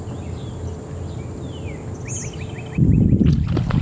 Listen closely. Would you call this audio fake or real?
real